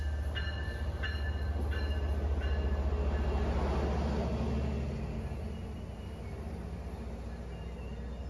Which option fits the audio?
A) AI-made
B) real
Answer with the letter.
B